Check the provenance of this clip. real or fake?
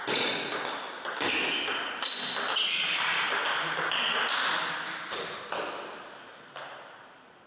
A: real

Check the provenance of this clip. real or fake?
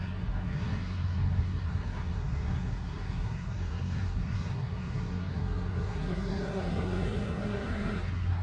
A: fake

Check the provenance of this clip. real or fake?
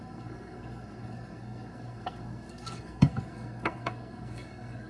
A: fake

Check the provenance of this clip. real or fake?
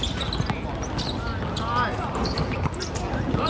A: real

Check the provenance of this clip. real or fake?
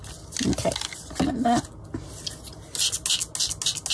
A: real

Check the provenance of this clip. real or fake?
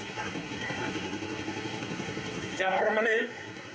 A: fake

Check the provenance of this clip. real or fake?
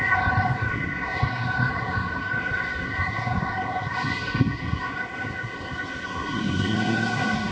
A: fake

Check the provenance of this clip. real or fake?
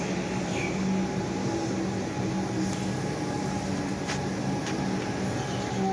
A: real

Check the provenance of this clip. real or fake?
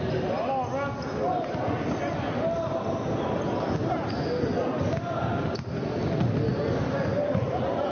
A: real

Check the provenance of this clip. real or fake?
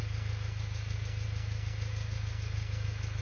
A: fake